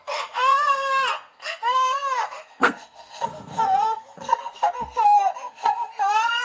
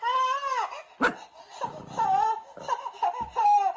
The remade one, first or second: first